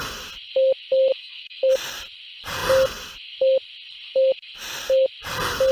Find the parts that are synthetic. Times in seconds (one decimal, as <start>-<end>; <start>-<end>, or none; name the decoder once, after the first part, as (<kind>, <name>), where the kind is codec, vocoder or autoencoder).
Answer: 1.1-1.7 (autoencoder, DAC-VAE)